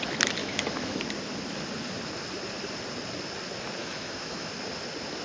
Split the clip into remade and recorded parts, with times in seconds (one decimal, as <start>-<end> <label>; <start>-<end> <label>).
0.0-0.4 recorded; 0.4-1.0 remade; 1.0-3.8 recorded; 3.8-4.5 remade; 4.5-5.2 recorded